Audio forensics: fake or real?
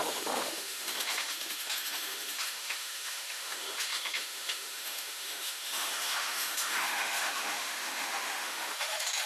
fake